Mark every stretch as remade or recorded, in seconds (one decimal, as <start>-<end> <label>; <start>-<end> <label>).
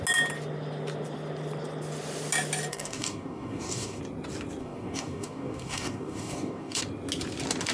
0.0-2.7 recorded; 2.7-4.0 remade; 4.0-4.6 recorded; 4.6-6.8 remade; 6.8-7.7 recorded